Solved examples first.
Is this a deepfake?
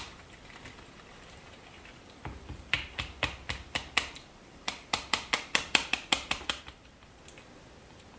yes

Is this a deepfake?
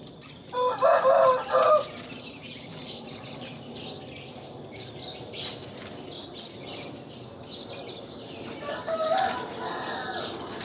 no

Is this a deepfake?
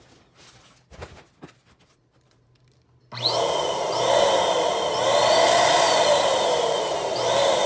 no